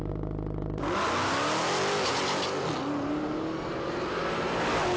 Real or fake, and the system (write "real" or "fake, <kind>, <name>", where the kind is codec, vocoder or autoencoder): real